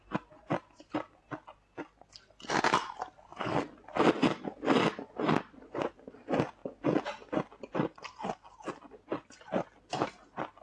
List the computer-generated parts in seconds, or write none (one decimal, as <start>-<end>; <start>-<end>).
none

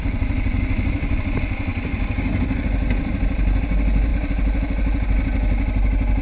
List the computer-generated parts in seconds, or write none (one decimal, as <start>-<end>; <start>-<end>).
none

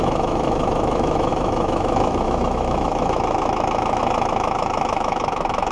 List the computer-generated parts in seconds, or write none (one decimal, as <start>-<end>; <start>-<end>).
0.0-5.7

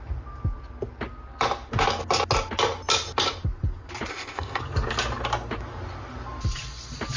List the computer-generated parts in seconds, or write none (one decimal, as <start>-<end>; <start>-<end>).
4.1-4.6

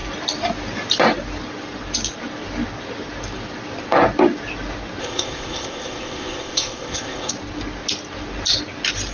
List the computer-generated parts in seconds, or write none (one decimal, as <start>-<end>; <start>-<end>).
5.0-7.3

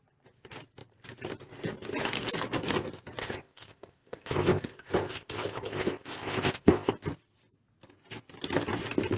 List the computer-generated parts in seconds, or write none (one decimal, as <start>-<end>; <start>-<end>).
3.2-6.9

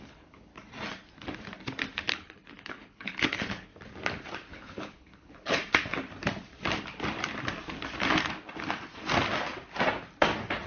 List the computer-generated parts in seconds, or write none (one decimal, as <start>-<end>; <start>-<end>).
0.0-0.5; 2.1-3.7; 4.5-5.6

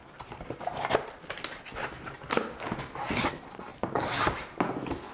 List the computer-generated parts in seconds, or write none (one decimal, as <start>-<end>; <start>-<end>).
none